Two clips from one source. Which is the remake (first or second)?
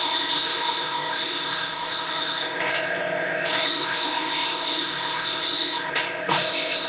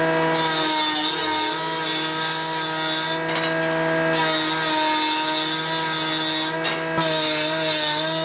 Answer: first